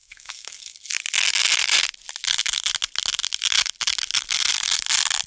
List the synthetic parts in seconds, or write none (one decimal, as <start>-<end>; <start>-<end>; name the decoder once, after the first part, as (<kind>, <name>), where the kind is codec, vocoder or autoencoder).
0.0-0.9 (codec, SNAC)